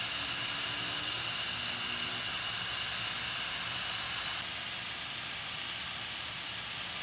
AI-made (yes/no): no